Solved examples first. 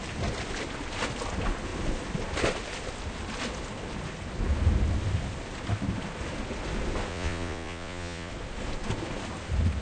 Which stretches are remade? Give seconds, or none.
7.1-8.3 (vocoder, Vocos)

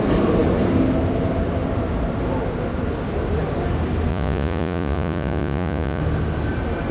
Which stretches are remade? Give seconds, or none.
4.1-6.0 (vocoder, Vocos)